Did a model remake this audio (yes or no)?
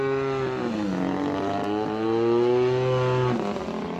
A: no